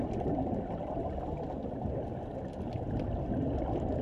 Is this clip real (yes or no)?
yes